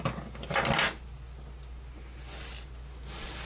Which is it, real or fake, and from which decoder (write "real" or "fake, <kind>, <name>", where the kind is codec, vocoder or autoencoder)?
real